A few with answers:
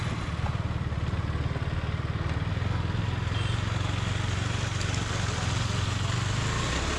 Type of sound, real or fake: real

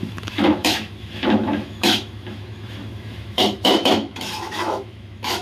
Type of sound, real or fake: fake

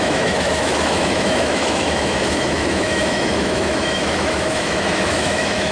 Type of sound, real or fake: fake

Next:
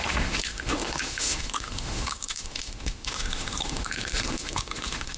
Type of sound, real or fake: fake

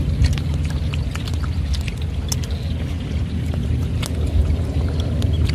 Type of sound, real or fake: real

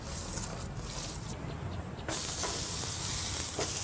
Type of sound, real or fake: real